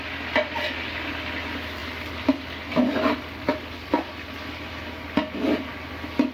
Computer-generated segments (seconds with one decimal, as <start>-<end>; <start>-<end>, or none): none